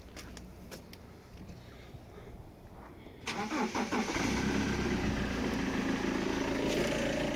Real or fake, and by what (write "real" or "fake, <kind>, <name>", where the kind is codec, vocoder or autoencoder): real